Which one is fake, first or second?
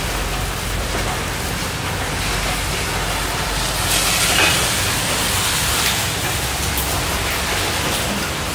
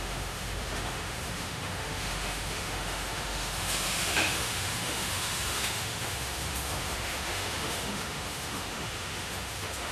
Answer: second